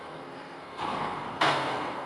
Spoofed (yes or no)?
yes